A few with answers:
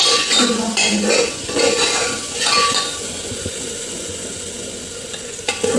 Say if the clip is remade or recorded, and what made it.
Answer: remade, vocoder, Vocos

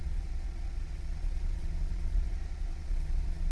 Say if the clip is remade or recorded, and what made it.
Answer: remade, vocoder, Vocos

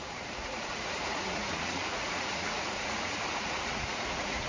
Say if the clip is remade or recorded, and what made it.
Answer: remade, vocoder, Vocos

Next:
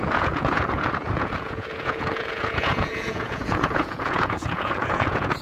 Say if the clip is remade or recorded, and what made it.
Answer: remade, vocoder, Vocos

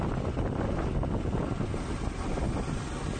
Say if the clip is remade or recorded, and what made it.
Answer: recorded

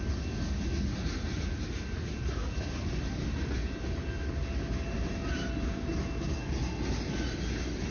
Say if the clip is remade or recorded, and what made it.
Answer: recorded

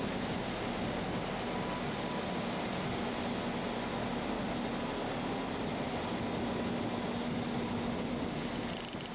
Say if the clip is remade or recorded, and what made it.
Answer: recorded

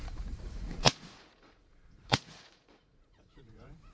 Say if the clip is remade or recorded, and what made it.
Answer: remade, vocoder, Vocos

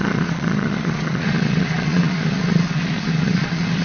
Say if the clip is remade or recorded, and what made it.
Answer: remade, vocoder, Vocos